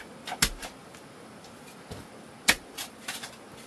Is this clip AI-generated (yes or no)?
no